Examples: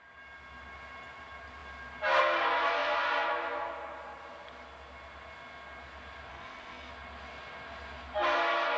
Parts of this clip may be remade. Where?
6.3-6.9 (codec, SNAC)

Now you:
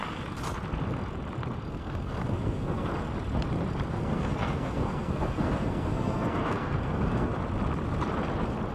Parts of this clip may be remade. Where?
1.7-2.9 (codec, SNAC); 3.9-7.3